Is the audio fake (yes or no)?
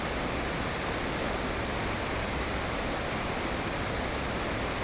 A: no